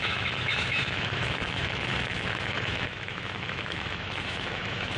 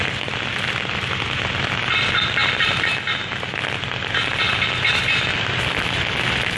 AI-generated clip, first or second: first